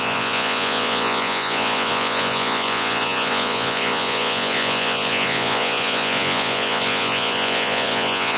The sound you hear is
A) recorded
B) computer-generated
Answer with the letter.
B